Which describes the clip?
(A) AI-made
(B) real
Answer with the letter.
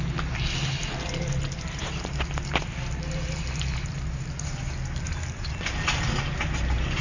B